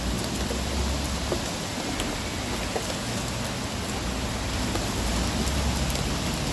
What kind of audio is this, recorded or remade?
recorded